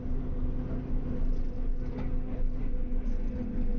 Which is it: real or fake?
real